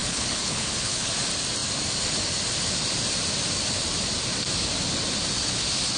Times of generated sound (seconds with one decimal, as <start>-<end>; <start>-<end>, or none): 0.0-1.1